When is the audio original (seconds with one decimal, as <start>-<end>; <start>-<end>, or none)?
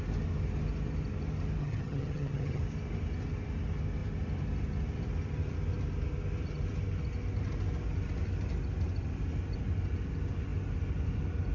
0.0-1.6; 2.6-11.5